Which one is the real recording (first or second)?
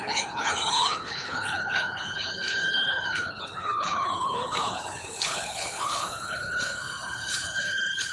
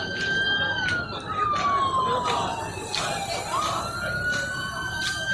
second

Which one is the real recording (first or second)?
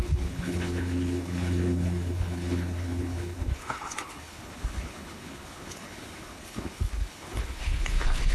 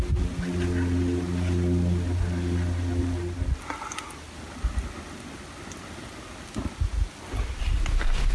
second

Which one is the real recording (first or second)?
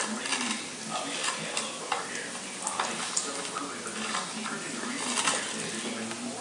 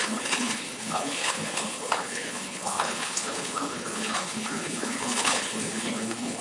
first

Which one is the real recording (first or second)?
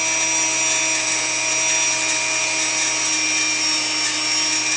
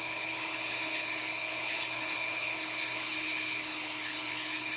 first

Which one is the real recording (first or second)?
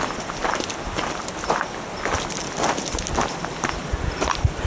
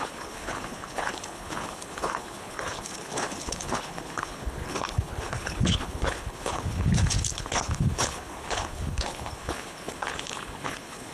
first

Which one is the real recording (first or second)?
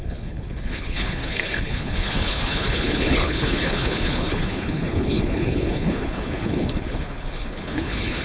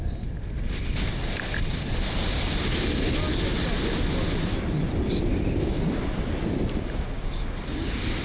second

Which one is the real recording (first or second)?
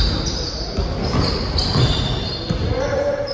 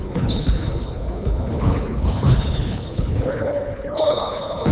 first